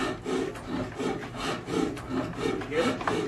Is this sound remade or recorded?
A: recorded